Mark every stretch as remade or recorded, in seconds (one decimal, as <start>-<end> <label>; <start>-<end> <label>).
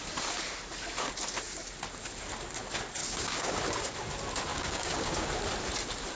0.0-3.0 recorded; 3.0-3.6 remade; 3.6-4.5 recorded; 4.5-5.3 remade; 5.3-6.1 recorded